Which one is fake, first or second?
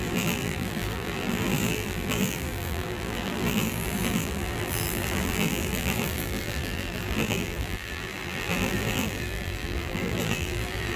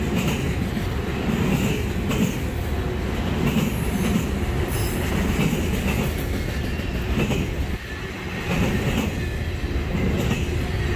first